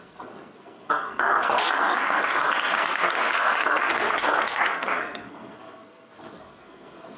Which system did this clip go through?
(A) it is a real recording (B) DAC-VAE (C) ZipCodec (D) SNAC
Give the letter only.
D